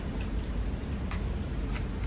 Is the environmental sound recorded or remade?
recorded